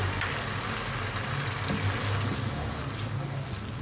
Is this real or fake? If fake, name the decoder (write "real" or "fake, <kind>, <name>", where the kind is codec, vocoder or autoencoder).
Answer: real